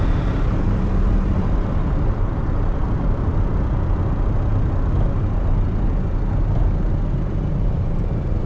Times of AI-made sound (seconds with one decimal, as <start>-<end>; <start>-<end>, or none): 0.0-3.3; 7.5-8.5